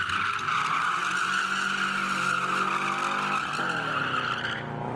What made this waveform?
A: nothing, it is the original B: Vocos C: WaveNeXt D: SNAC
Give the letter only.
A